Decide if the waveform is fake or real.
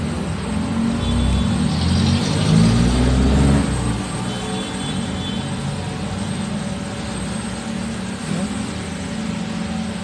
real